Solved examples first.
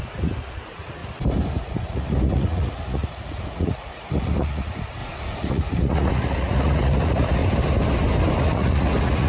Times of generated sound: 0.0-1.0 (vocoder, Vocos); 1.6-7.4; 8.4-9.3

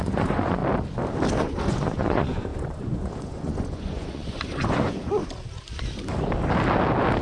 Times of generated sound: 0.0-0.6 (vocoder, Vocos); 1.4-5.2

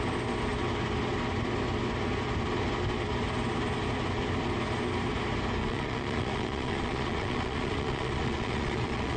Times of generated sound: 5.6-9.2 (vocoder, Vocos)

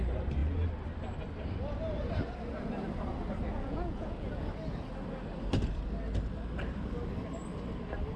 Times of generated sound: 3.5-4.4 (vocoder, Vocos)